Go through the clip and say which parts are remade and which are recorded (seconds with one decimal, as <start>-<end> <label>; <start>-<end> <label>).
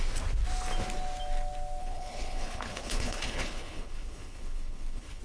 0.0-1.8 recorded; 1.8-5.2 remade